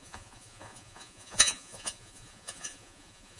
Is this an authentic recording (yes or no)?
no